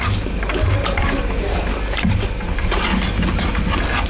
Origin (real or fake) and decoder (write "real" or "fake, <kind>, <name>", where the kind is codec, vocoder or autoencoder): real